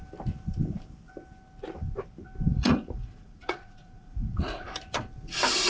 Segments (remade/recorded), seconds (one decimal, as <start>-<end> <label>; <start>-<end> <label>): 0.0-2.5 recorded; 2.5-4.7 remade; 4.7-5.7 recorded